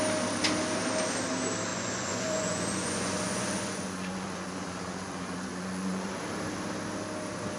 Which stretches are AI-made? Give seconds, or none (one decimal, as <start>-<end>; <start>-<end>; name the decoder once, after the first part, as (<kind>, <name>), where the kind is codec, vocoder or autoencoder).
1.7-6.2 (vocoder, Vocos)